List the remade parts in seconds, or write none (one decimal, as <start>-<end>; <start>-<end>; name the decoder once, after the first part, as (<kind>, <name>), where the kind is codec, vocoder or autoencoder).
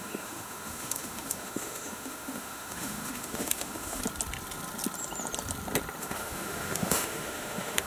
0.0-4.0 (autoencoder, DAC-VAE); 6.0-7.9